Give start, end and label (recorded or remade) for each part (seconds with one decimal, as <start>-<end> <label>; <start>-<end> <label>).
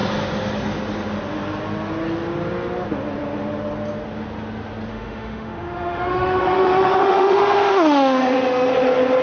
0.0-4.9 recorded; 4.9-8.7 remade; 8.7-9.2 recorded